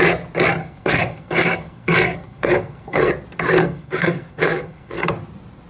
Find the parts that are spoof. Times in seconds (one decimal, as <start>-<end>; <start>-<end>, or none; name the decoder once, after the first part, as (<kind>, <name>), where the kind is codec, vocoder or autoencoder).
0.6-3.1 (codec, SNAC); 3.6-5.1